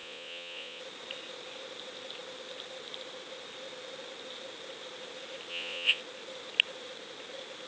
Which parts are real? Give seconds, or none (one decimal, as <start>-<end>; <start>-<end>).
0.8-5.5; 6.0-7.7